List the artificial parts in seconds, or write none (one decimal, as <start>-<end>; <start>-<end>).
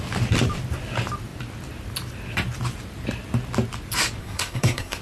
4.2-5.0